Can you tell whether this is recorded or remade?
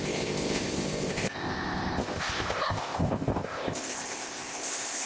remade